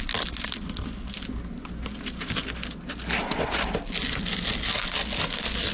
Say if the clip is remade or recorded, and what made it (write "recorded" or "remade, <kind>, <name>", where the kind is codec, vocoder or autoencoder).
recorded